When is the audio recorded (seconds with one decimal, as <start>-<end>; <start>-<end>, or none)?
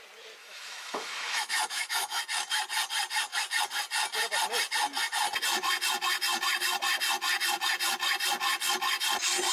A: 0.0-0.4; 2.2-9.5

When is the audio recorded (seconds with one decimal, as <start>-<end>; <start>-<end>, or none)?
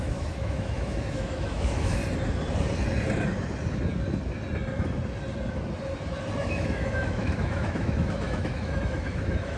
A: 2.0-6.4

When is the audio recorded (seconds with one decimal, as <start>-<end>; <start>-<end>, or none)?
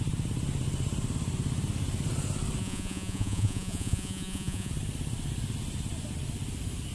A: 0.0-2.6; 4.7-6.9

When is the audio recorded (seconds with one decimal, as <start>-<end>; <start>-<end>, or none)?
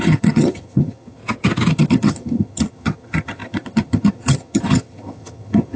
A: 1.2-1.7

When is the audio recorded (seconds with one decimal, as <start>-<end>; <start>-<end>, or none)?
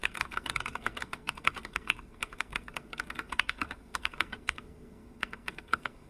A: none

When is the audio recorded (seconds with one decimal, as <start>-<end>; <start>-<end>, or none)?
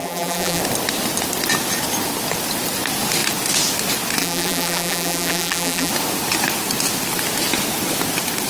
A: 0.6-4.2; 5.9-8.5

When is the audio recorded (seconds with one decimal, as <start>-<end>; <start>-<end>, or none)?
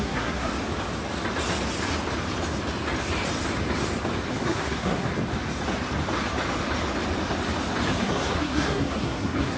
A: 0.5-4.3; 5.1-8.0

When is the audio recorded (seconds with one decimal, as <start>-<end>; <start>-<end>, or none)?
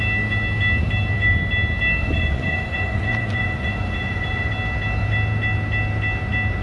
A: 0.0-2.0; 4.5-6.6